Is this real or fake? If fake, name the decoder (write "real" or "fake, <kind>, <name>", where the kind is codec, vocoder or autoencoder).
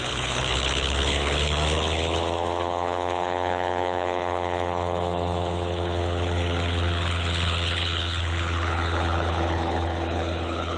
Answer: fake, codec, HILCodec